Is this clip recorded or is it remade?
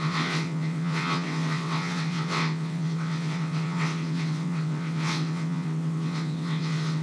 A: remade